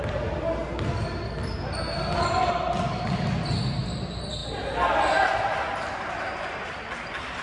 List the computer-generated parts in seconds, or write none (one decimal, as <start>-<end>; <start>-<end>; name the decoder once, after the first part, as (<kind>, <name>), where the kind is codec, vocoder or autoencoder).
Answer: none